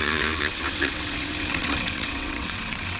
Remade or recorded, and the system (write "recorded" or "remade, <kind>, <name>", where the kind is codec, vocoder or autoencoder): remade, vocoder, WaveNeXt